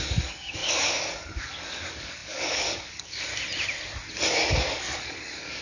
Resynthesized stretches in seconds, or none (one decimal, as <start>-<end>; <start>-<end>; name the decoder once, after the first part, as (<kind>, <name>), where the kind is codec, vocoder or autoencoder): 0.0-3.3 (codec, DAC); 4.3-5.6